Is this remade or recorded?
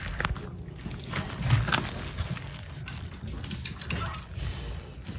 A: recorded